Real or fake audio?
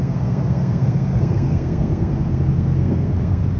fake